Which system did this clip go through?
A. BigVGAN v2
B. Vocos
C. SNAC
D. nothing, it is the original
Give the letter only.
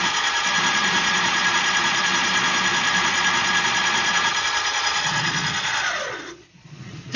B